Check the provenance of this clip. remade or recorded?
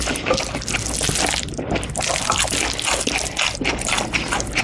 recorded